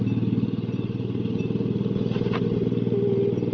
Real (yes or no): yes